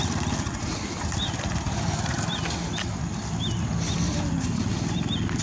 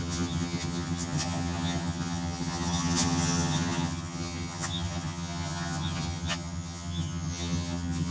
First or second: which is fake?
second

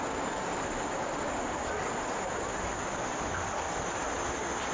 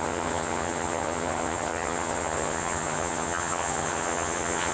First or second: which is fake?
second